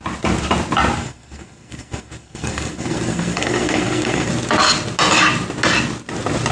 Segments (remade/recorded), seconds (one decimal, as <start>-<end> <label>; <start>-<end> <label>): 0.0-1.0 recorded; 1.0-4.3 remade; 4.3-6.5 recorded